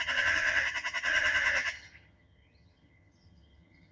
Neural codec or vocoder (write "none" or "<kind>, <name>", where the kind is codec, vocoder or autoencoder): vocoder, HiFi-GAN